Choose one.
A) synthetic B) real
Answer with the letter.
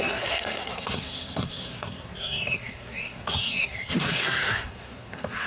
A